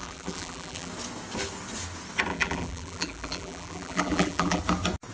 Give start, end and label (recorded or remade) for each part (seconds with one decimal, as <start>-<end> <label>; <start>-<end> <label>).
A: 0.0-0.9 remade; 0.9-2.3 recorded; 2.3-4.6 remade; 4.6-5.1 recorded